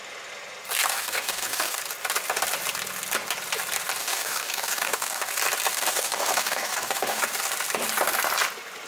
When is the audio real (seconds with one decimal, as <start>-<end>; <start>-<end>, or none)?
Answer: 0.0-0.9; 1.8-4.0; 5.3-5.7; 7.2-8.9